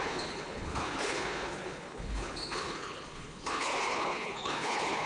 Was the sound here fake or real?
fake